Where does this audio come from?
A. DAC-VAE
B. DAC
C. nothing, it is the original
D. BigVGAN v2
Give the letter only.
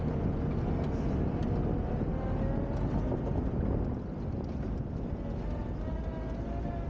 C